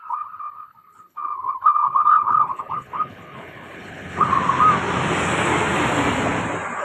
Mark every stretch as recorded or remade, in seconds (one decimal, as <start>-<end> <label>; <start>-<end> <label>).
0.0-4.3 remade; 4.3-6.8 recorded